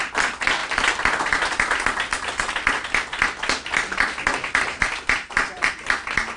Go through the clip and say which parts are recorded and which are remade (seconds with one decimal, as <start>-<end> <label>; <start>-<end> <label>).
0.0-0.6 recorded; 0.6-4.0 remade; 4.0-4.4 recorded; 4.4-5.7 remade; 5.7-6.4 recorded